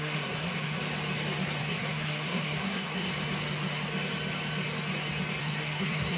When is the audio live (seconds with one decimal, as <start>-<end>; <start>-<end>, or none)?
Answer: 0.8-1.6; 3.1-5.4